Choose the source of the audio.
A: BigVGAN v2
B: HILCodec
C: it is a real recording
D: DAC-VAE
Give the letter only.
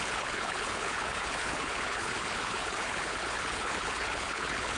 B